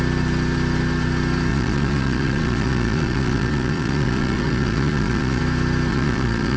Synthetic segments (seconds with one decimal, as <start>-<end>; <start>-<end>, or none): 1.5-5.4; 5.9-6.6